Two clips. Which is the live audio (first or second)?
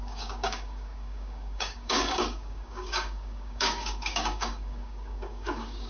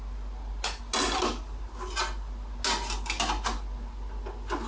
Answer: second